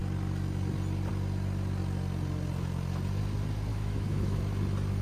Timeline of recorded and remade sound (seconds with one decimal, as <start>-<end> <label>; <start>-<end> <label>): 0.0-3.7 recorded; 3.7-4.4 remade; 4.4-5.0 recorded